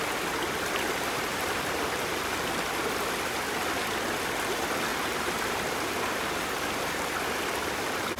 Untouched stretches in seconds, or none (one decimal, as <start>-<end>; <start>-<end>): 0.0-8.2